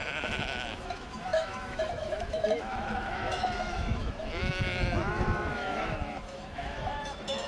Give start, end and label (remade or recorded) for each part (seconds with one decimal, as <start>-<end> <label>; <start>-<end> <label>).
0.0-7.5 remade